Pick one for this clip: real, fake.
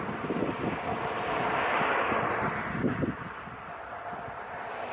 real